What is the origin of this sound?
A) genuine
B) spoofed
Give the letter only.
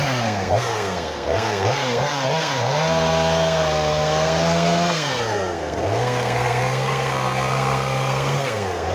B